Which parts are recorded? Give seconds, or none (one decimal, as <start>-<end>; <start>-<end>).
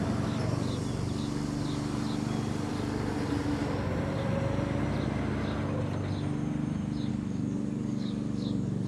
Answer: 0.0-7.1